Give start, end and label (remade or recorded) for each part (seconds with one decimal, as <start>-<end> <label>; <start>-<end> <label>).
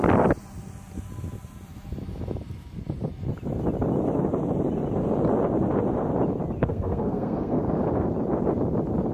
0.0-6.6 recorded; 6.6-7.6 remade; 7.6-9.1 recorded